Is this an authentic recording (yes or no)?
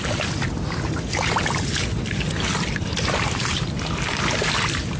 yes